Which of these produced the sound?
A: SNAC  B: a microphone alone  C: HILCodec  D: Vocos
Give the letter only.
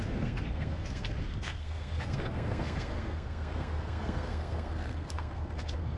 A